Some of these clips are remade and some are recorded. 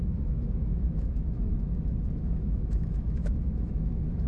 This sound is remade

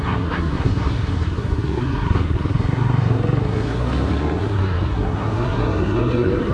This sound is remade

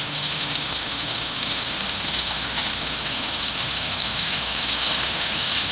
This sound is remade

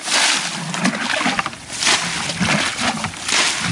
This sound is recorded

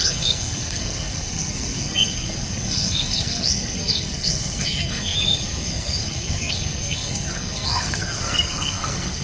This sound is remade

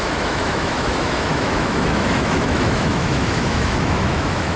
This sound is remade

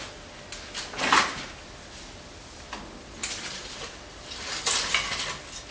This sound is recorded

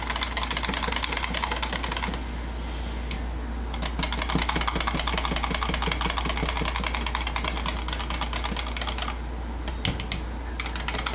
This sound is recorded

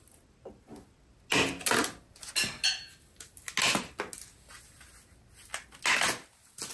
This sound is recorded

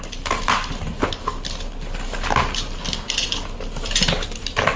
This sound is recorded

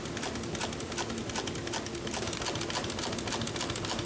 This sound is recorded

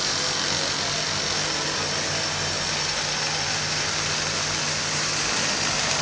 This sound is recorded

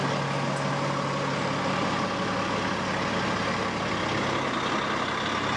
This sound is recorded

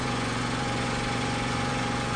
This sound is remade